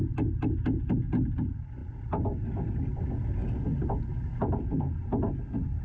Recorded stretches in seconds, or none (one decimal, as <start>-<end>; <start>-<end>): 0.0-5.8